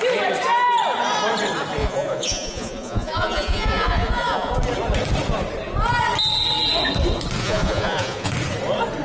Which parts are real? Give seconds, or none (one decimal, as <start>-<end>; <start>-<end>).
0.0-1.8; 4.5-7.4; 8.3-9.0